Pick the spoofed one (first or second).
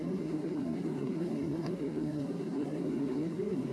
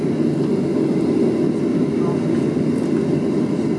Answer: first